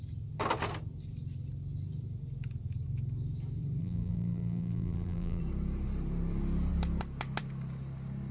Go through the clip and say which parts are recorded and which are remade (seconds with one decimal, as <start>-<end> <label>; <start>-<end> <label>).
0.0-3.8 recorded; 3.8-5.4 remade; 5.4-8.3 recorded